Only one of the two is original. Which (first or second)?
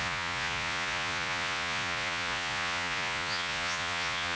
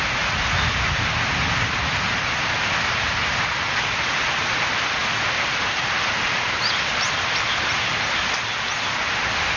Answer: second